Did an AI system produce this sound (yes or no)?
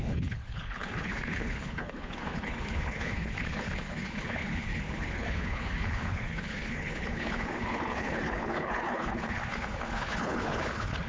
yes